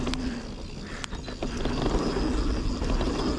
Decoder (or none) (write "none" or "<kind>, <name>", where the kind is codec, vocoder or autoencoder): none